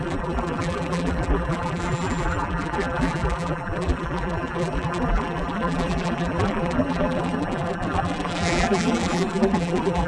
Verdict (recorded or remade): remade